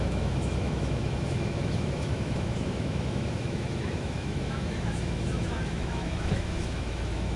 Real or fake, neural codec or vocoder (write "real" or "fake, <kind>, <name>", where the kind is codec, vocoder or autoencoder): fake, autoencoder, DAC-VAE